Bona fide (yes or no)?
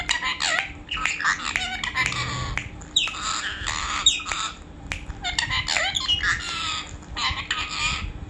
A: yes